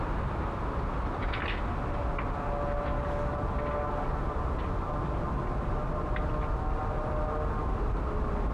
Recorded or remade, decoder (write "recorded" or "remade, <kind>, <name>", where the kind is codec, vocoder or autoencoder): recorded